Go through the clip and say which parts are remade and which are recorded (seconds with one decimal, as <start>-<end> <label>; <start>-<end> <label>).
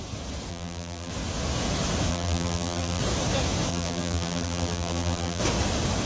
0.0-0.5 recorded; 0.5-1.1 remade; 1.1-2.1 recorded; 2.1-3.0 remade; 3.0-3.7 recorded; 3.7-5.4 remade; 5.4-6.1 recorded